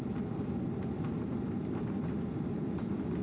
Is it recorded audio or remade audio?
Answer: recorded